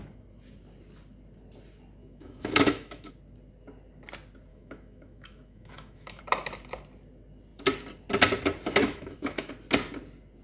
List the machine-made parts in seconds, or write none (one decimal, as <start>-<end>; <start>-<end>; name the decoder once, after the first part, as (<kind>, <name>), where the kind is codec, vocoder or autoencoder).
2.0-3.1 (autoencoder, DAC-VAE); 4.5-6.2; 8.8-9.5